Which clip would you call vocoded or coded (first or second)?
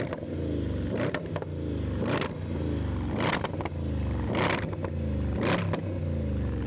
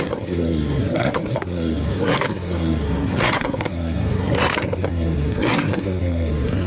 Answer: second